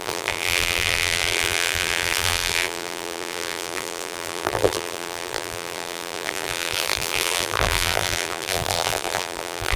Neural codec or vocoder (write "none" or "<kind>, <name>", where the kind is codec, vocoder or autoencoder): vocoder, BigVGAN v2